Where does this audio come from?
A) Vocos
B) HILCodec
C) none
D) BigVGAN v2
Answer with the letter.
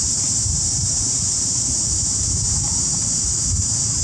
D